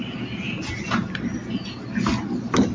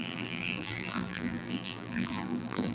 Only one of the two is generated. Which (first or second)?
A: second